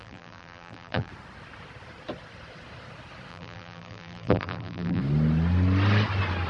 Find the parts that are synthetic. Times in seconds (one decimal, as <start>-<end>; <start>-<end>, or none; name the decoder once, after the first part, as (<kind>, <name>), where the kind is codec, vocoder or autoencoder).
0.0-1.1 (vocoder, BigVGAN v2); 3.3-5.0